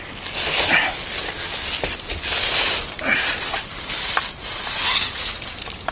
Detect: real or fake real